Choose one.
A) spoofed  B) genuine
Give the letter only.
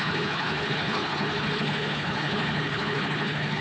A